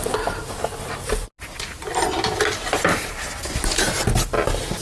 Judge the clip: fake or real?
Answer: real